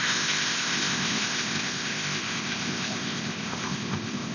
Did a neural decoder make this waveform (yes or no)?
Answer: yes